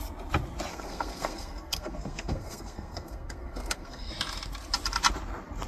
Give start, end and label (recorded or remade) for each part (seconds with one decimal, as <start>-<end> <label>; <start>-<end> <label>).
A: 0.0-0.7 recorded; 0.7-4.1 remade; 4.1-5.7 recorded